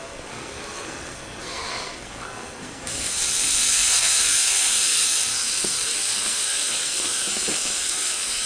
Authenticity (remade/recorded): remade